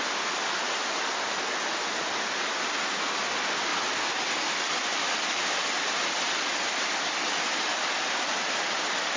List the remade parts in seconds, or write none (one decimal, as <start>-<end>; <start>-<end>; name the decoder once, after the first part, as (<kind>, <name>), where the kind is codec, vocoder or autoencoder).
none